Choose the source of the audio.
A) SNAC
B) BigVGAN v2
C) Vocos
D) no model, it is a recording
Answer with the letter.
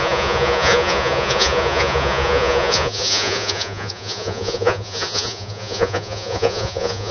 C